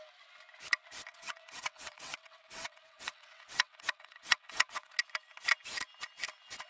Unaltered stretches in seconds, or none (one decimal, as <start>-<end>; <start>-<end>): 0.0-1.1; 4.9-6.7